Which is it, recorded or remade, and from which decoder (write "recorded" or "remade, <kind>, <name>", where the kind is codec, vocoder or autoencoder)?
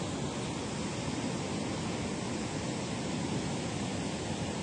recorded